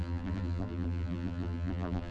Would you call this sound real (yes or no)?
no